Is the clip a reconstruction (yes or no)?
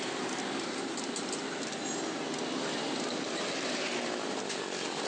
no